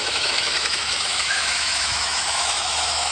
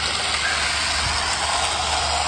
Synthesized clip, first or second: first